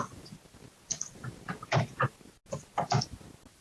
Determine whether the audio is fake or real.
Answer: real